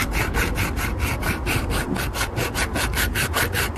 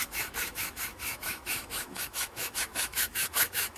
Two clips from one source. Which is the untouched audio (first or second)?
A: first